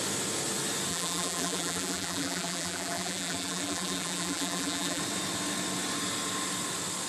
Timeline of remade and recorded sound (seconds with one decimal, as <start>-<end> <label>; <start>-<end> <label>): 0.0-0.9 recorded; 0.9-5.0 remade; 5.0-7.1 recorded

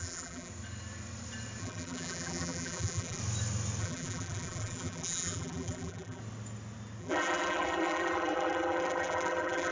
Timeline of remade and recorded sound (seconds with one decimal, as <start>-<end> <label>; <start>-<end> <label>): 0.0-0.5 remade; 0.5-1.6 recorded; 1.6-3.2 remade; 3.2-3.8 recorded; 3.8-6.2 remade; 6.2-7.0 recorded; 7.0-9.7 remade